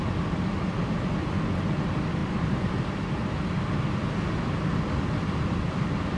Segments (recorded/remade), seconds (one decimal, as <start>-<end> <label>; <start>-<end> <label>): 0.0-6.2 recorded